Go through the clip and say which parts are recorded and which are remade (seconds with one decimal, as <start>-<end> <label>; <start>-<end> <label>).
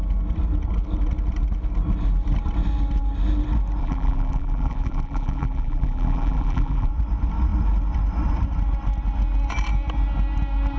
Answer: 0.0-3.8 recorded; 3.8-6.9 remade; 6.9-10.8 recorded